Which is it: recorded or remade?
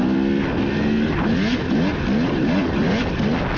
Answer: recorded